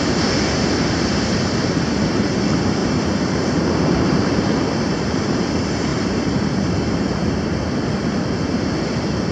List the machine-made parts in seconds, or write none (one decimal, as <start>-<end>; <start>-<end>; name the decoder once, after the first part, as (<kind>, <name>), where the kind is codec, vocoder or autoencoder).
2.8-5.5 (vocoder, BigVGAN v2); 5.9-7.3